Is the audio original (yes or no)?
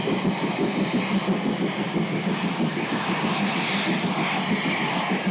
yes